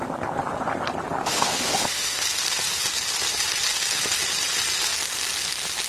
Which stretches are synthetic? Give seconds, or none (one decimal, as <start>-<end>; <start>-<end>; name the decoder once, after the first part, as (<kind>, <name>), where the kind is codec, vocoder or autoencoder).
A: 1.2-2.2 (autoencoder, DAC-VAE)